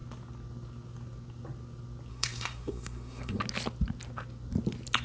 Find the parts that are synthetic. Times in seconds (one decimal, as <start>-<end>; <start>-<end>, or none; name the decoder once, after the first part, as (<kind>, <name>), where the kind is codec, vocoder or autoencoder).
2.1-3.4 (codec, SNAC)